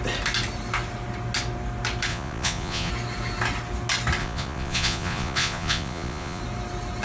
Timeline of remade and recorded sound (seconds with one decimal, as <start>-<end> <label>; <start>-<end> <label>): 0.0-2.1 recorded; 2.1-2.9 remade; 2.9-4.2 recorded; 4.2-6.4 remade; 6.4-7.0 recorded